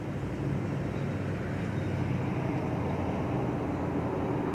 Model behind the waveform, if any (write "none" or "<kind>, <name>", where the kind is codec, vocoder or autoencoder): none